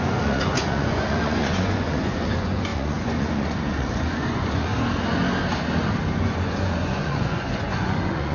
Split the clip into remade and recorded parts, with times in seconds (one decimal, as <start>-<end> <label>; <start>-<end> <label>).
0.0-4.7 remade; 4.7-6.2 recorded; 6.2-8.3 remade